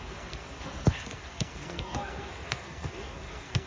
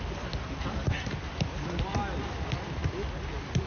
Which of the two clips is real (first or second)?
second